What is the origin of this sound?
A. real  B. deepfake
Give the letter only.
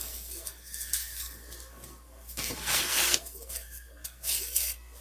B